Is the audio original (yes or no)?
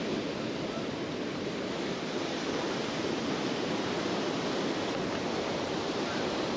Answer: yes